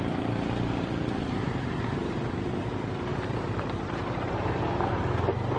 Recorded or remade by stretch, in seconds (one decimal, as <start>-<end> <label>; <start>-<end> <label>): 0.0-5.6 recorded